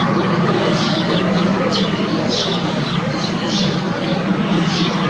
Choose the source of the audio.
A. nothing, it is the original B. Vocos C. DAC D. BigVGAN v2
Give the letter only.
C